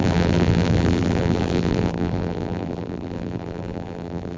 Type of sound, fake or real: fake